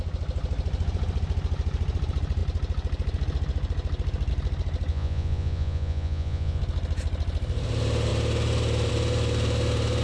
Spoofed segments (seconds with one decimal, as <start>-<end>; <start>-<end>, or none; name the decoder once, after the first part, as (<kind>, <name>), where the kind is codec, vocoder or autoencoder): 4.9-6.6 (vocoder, Vocos)